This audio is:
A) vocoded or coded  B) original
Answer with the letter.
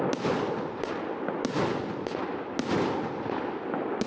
B